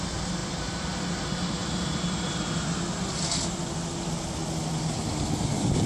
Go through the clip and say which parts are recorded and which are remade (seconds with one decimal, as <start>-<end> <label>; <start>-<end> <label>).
0.0-0.4 recorded; 0.4-0.9 remade; 0.9-5.9 recorded